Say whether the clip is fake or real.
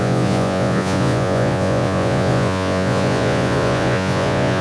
fake